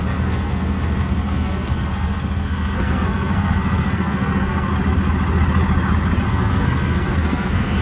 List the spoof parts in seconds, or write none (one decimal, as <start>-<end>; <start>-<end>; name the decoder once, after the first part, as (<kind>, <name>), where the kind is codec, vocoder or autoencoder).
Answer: 0.0-4.7 (codec, SNAC); 6.3-7.8